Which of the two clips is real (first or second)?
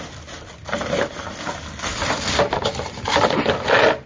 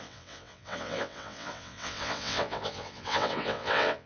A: first